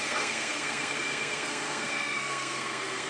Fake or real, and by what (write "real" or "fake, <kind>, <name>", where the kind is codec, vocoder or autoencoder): fake, codec, SNAC